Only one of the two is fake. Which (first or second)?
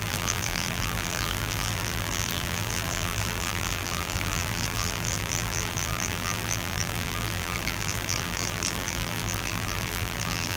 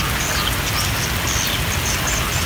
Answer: first